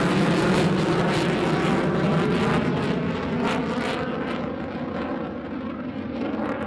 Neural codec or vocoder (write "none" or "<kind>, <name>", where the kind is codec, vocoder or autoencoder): none